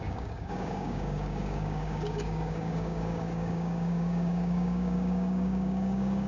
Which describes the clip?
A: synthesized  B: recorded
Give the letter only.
A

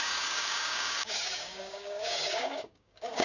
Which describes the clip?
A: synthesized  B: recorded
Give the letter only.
A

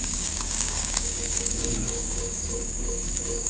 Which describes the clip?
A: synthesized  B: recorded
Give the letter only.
A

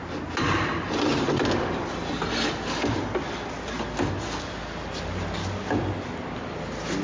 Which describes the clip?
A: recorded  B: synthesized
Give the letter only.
A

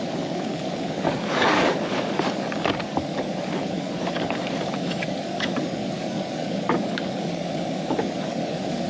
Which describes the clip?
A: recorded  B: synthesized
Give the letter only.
B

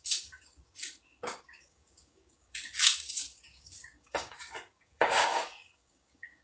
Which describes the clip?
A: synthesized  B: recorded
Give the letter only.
A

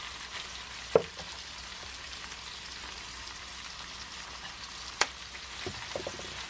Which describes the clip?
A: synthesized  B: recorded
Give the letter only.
B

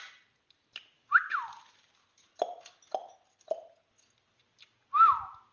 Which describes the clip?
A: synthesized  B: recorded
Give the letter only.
B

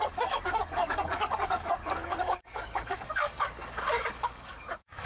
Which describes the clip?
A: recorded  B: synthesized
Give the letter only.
B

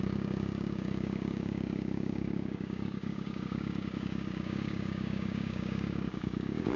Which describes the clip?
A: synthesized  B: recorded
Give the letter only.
A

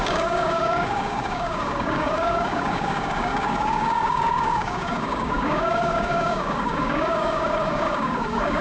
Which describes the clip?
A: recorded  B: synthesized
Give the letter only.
B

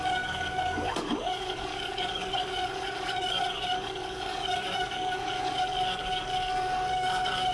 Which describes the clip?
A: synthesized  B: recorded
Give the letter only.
A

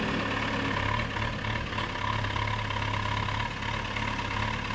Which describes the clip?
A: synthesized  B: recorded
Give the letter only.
B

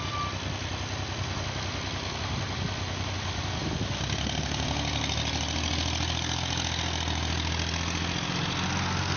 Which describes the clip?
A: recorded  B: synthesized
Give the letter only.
A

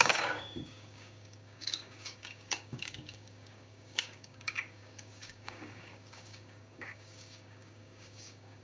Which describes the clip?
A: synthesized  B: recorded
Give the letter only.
A